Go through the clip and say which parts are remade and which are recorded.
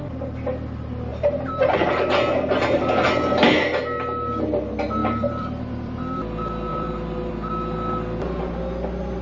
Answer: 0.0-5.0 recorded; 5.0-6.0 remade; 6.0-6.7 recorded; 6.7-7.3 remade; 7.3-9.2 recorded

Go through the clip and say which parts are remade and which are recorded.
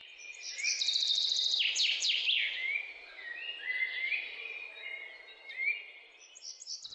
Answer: 0.0-6.9 recorded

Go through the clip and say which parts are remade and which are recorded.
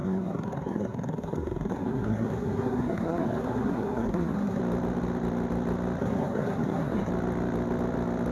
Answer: 0.0-4.6 remade; 4.6-6.0 recorded; 6.0-7.1 remade; 7.1-8.3 recorded